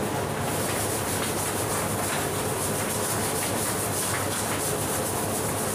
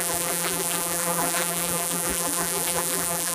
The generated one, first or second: second